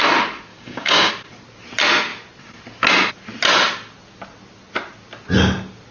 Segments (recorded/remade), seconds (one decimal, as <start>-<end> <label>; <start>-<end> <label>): 0.0-0.5 recorded; 0.5-1.1 remade; 1.1-5.9 recorded